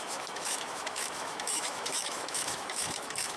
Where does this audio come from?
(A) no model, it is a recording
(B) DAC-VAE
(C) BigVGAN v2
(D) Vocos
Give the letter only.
B